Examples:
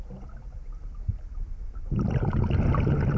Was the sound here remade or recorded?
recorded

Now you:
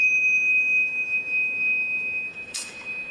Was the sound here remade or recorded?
remade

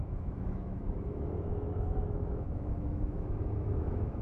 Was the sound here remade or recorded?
remade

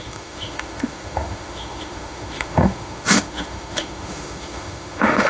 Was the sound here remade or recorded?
remade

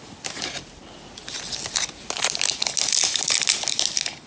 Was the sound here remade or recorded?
recorded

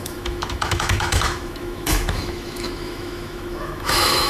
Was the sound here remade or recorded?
remade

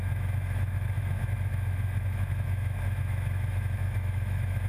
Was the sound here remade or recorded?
remade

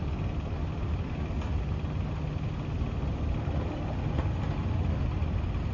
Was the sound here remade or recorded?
recorded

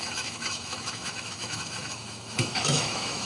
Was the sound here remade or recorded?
remade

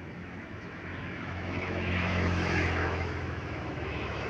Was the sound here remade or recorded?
remade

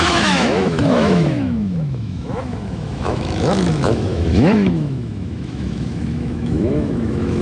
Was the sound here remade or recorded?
remade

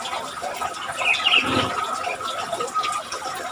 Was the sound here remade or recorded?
recorded